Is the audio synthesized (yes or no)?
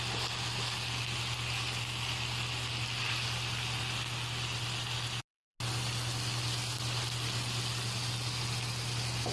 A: no